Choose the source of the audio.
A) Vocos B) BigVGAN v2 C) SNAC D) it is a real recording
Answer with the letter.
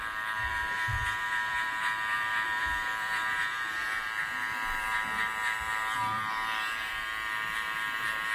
B